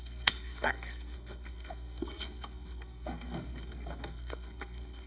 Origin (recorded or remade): remade